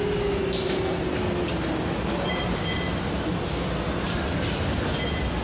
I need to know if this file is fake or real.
real